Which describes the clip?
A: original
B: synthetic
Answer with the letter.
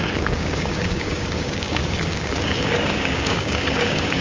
B